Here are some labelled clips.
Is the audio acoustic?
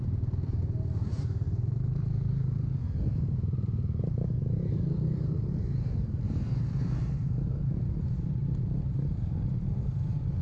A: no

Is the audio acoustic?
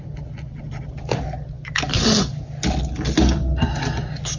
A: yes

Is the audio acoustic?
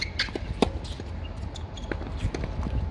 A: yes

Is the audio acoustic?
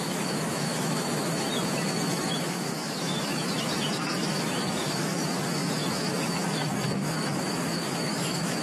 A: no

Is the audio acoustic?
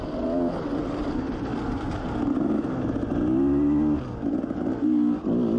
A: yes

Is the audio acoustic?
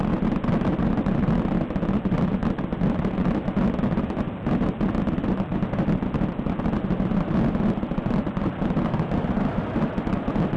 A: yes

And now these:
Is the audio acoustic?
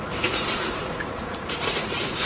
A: no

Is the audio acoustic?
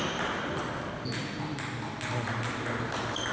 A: yes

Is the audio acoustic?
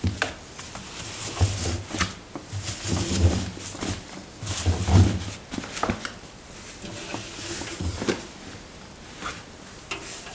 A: yes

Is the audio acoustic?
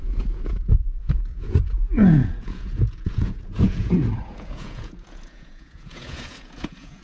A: no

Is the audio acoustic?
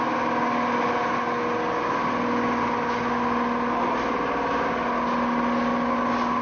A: yes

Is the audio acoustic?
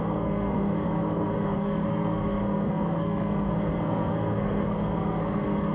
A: no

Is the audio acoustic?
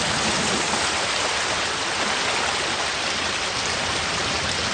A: yes